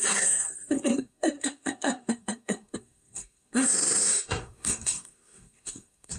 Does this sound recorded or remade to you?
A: remade